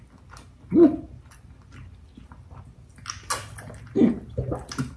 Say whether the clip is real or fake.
real